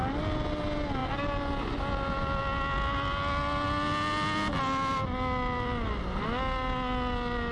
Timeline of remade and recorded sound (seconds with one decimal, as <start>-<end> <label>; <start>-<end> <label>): 0.0-7.5 recorded

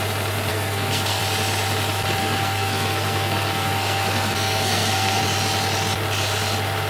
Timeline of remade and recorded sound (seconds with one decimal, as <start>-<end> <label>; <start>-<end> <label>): 0.0-0.5 recorded; 0.5-1.2 remade; 1.2-2.2 recorded; 2.2-5.2 remade; 5.2-6.9 recorded

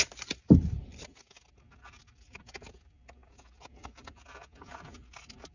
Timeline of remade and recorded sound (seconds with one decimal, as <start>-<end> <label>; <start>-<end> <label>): 0.0-5.5 recorded

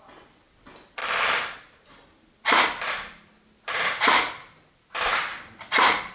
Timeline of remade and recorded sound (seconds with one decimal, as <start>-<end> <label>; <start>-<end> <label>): 0.0-1.0 remade; 1.0-4.7 recorded; 4.7-6.1 remade

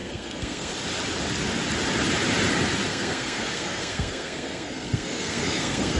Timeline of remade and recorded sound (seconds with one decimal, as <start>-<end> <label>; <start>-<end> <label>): 0.0-0.7 remade; 0.7-2.9 recorded; 2.9-6.0 remade

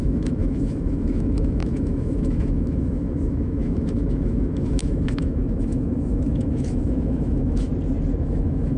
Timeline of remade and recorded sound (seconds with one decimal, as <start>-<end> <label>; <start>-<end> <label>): 0.0-7.7 remade; 7.7-8.2 recorded; 8.2-8.8 remade